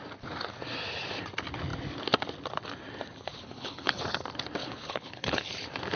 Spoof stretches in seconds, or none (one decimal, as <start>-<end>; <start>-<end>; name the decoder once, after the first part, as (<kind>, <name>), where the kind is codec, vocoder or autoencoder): 3.3-4.0 (codec, HILCodec); 4.6-5.5